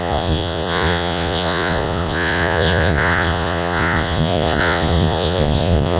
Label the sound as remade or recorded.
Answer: remade